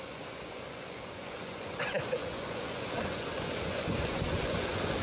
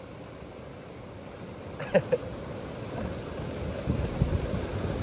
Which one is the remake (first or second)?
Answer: first